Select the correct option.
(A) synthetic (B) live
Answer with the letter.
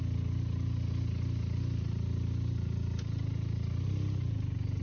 B